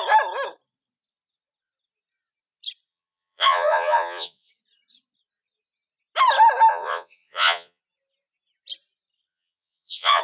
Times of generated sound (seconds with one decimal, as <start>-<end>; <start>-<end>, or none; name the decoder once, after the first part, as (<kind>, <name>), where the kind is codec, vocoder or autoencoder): 2.9-4.5 (vocoder, Vocos); 6.7-7.8; 9.3-10.2